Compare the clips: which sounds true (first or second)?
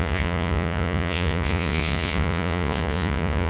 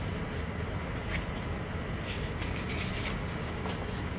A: second